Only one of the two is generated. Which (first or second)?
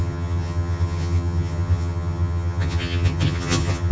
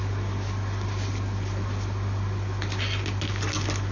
first